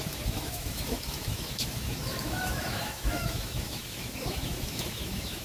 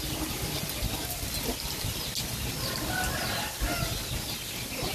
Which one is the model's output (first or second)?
first